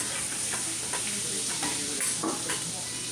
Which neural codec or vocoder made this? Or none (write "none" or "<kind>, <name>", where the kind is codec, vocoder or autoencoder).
none